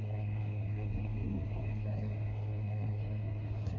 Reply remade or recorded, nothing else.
remade